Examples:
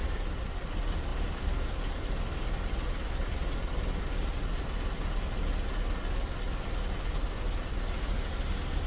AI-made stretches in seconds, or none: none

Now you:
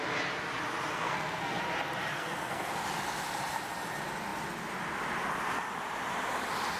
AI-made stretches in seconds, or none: 0.9-1.6 (codec, SNAC); 2.1-2.8

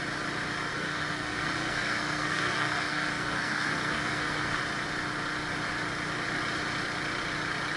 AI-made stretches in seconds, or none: 0.7-4.6 (codec, SNAC)